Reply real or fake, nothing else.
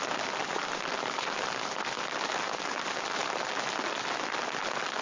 real